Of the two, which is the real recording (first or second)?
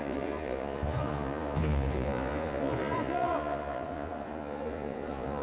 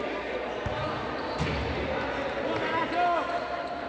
second